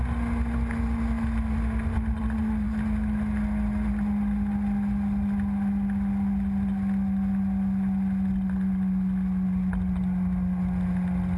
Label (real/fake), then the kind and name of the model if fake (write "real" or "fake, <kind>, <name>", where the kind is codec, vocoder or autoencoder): real